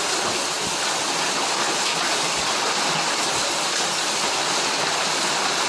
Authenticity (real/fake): real